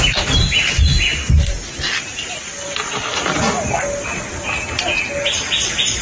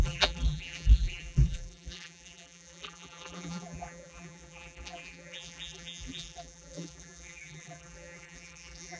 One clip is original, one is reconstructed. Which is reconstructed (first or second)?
second